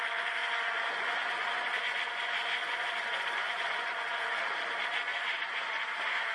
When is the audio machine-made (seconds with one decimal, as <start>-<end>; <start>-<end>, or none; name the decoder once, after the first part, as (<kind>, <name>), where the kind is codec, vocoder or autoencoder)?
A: 0.4-4.2 (vocoder, Vocos); 5.1-6.3